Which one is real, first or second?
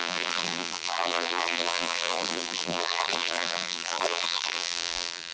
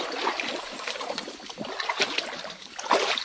second